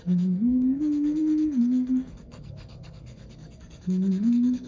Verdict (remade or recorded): remade